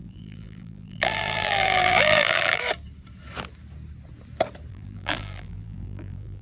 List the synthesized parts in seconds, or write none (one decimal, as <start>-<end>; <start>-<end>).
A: 0.0-2.6; 4.7-6.4